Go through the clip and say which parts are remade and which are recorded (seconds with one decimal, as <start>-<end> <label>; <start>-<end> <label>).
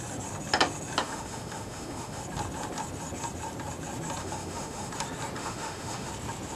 0.0-1.0 recorded; 1.0-2.2 remade; 2.2-4.2 recorded; 4.2-4.9 remade; 4.9-5.4 recorded; 5.4-6.1 remade; 6.1-6.6 recorded